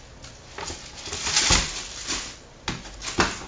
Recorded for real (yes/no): yes